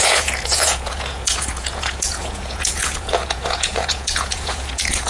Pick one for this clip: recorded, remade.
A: remade